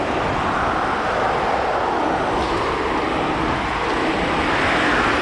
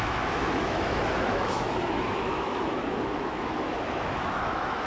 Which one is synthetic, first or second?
second